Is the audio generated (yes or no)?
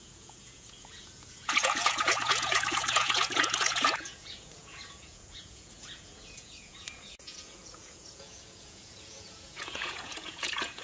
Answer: yes